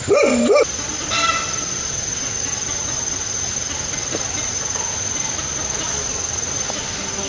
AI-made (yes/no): no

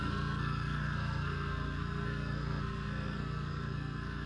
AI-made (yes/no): yes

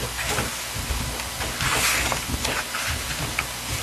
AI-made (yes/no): no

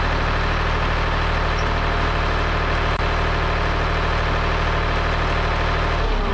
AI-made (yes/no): no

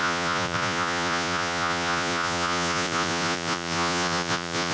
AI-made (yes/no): yes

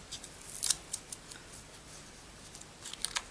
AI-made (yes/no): no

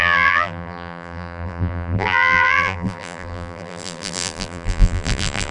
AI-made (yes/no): yes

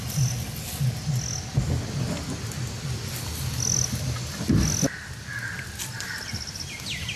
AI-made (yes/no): no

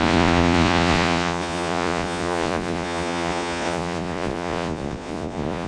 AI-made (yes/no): yes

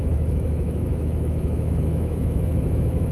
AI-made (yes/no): yes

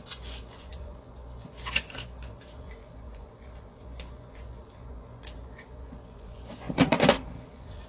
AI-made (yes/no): yes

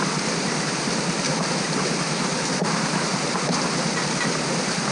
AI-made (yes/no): no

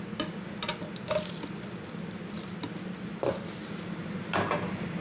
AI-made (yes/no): no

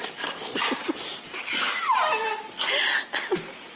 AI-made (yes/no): no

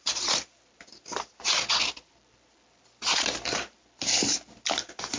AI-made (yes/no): no